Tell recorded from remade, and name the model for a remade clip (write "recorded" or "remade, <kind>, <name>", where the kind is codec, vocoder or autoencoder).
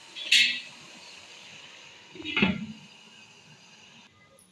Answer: recorded